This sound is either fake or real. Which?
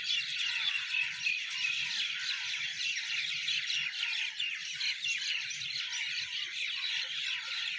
fake